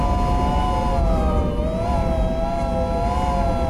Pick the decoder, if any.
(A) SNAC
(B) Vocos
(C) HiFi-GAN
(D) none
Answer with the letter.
D